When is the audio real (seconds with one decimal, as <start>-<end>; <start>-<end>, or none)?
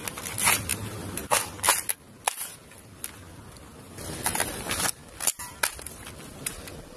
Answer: 0.0-0.7; 1.4-7.0